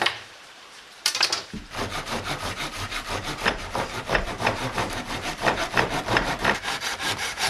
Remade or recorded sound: remade